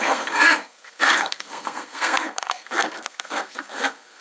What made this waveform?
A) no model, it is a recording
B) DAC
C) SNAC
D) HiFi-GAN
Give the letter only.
C